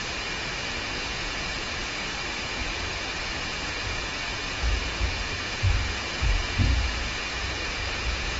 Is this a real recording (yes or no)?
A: no